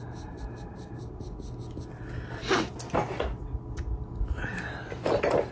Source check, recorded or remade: recorded